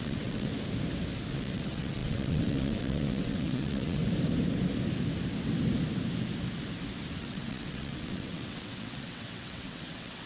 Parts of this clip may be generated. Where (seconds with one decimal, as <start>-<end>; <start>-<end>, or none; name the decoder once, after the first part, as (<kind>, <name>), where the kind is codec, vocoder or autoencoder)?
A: 0.0-0.5 (vocoder, WaveNeXt); 1.3-4.0; 7.2-10.3